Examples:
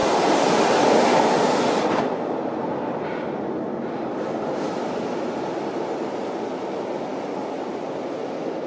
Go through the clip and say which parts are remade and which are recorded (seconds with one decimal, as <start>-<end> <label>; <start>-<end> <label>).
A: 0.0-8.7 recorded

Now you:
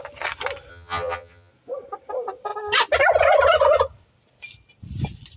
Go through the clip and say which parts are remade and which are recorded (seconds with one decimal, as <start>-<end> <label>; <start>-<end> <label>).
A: 0.0-0.7 recorded; 0.7-1.5 remade; 1.5-5.4 recorded

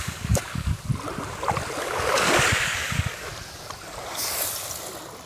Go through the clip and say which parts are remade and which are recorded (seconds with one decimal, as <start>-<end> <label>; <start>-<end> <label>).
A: 0.0-0.9 remade; 0.9-1.8 recorded; 1.8-3.3 remade; 3.3-5.3 recorded

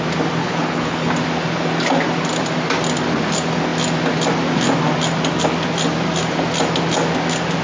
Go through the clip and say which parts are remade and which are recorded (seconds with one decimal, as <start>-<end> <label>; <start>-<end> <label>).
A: 0.0-0.4 recorded; 0.4-1.1 remade; 1.1-7.6 recorded

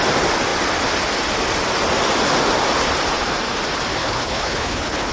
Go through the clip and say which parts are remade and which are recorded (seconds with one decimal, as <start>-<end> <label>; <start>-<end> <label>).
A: 0.0-4.0 recorded; 4.0-5.1 remade

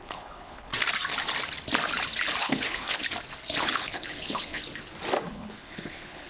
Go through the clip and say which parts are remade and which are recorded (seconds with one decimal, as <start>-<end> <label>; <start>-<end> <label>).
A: 0.0-0.7 remade; 0.7-2.4 recorded; 2.4-3.0 remade; 3.0-3.6 recorded; 3.6-4.6 remade; 4.6-5.3 recorded; 5.3-6.3 remade